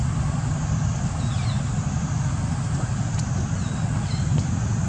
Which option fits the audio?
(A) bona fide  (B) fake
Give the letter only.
A